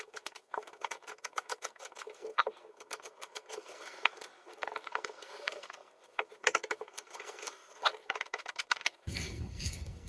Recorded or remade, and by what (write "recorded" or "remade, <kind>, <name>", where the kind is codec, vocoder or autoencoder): remade, codec, SNAC